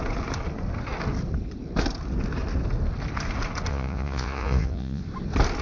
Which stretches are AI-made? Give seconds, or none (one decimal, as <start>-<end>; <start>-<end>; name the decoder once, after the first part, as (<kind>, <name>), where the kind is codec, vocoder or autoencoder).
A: 3.7-5.0 (vocoder, Vocos)